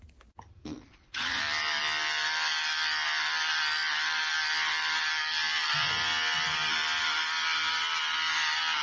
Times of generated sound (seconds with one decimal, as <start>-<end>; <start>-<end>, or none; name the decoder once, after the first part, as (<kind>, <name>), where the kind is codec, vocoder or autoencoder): 0.6-1.4 (vocoder, Vocos)